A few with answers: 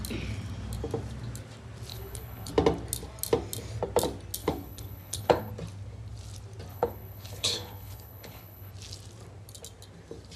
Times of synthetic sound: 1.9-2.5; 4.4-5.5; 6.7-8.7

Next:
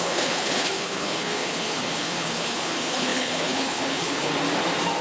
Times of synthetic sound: 0.0-4.3

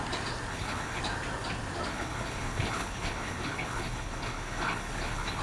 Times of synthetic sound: 0.5-1.0; 1.9-5.4

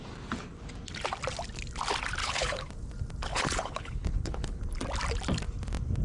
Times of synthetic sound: 2.2-2.7; 3.3-4.6